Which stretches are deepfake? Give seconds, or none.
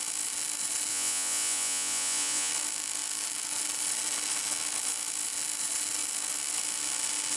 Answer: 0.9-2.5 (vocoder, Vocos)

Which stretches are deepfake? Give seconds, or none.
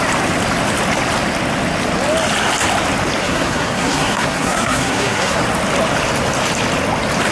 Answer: 3.2-5.4 (codec, SNAC)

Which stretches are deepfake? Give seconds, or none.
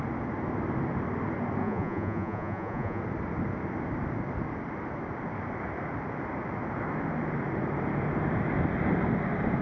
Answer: 1.6-3.0 (vocoder, Vocos)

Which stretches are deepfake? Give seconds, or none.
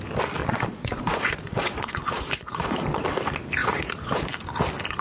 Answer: 0.4-3.0 (vocoder, Vocos); 3.6-4.2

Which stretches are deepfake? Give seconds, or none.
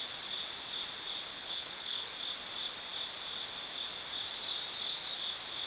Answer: 1.3-2.1 (codec, HILCodec)